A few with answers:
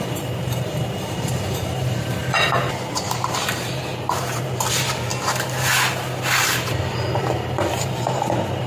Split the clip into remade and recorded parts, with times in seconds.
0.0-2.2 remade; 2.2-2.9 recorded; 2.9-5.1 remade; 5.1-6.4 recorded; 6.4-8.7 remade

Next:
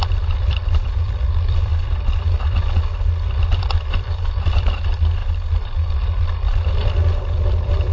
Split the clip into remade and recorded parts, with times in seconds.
0.0-1.7 remade; 1.7-3.6 recorded; 3.6-5.2 remade; 5.2-7.5 recorded; 7.5-7.9 remade

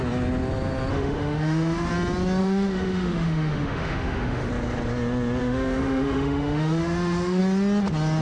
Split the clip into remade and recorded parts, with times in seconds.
0.0-0.9 recorded; 0.9-1.9 remade; 1.9-2.4 recorded; 2.4-4.5 remade; 4.5-5.4 recorded; 5.4-7.4 remade; 7.4-8.2 recorded